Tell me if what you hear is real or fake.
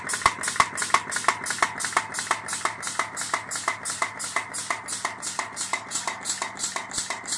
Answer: real